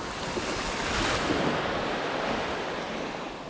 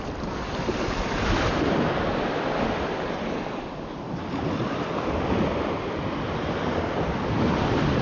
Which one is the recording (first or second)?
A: first